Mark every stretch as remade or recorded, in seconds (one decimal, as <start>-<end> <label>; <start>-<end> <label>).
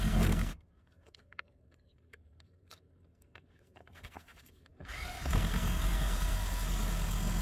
0.0-7.4 remade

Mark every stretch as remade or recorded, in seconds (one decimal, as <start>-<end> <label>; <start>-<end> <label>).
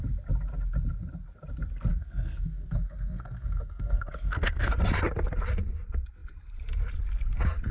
0.0-1.9 recorded; 1.9-4.7 remade; 4.7-7.7 recorded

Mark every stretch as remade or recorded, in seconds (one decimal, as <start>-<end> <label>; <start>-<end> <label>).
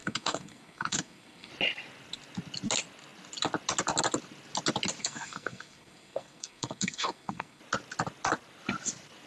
0.0-1.5 remade; 1.5-5.0 recorded; 5.0-7.6 remade; 7.6-9.3 recorded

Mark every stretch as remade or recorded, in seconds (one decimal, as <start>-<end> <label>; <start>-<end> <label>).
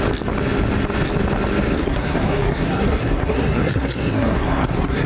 0.0-1.8 recorded; 1.8-5.1 remade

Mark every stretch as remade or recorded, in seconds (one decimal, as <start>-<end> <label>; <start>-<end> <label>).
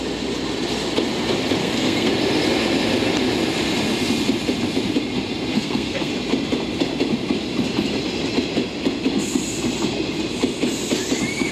0.0-1.6 recorded; 1.6-2.1 remade; 2.1-5.5 recorded; 5.5-6.1 remade; 6.1-11.5 recorded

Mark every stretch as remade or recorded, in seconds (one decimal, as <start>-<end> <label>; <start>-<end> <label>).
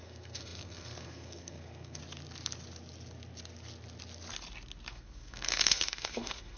0.0-2.0 remade; 2.0-4.9 recorded; 4.9-6.6 remade